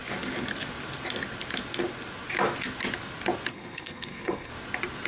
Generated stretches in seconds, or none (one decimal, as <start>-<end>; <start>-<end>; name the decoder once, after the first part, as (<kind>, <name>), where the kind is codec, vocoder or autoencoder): 3.5-4.5 (codec, SNAC)